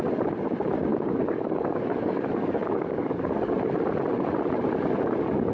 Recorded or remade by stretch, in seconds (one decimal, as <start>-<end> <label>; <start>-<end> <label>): 0.0-0.9 recorded; 0.9-3.5 remade; 3.5-5.5 recorded